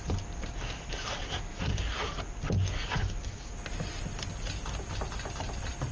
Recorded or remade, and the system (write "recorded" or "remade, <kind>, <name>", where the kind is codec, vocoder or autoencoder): recorded